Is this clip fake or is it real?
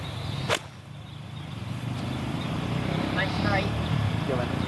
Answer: fake